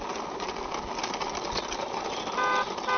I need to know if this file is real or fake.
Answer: real